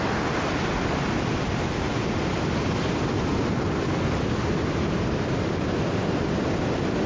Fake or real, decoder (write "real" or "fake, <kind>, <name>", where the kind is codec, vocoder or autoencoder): real